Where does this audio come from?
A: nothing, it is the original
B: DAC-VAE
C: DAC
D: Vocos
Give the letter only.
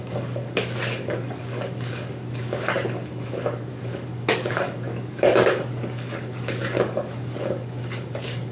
C